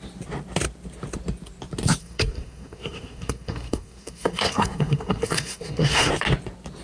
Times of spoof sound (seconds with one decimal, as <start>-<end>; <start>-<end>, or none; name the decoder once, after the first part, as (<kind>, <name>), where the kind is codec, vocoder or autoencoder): 2.0-6.1 (codec, SNAC)